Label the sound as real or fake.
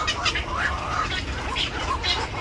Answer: real